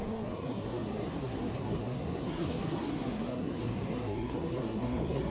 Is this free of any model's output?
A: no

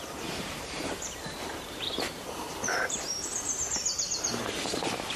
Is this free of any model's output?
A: no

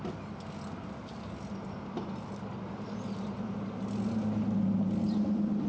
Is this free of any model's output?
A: yes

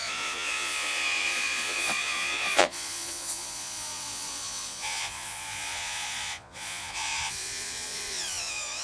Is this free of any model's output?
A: no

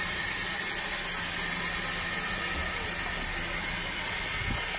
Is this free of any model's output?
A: yes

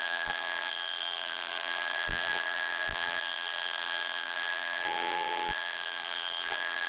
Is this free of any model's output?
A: no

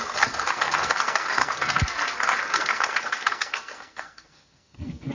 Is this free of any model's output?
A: no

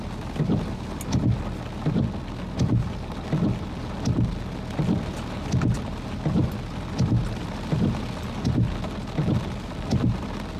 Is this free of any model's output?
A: yes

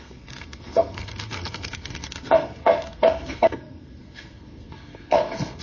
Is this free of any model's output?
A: no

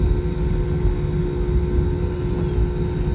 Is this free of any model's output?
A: yes